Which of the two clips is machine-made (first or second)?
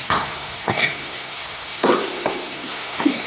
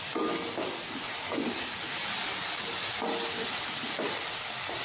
first